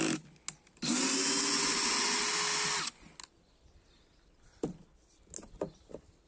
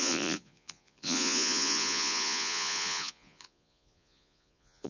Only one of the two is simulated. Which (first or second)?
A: second